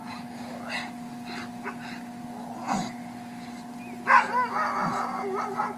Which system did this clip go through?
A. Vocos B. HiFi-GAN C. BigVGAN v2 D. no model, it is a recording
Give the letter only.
D